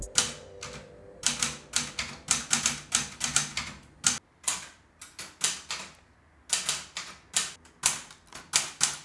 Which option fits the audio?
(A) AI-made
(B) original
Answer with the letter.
B